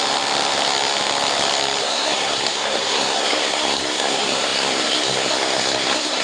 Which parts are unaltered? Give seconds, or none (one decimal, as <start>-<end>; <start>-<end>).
0.0-1.8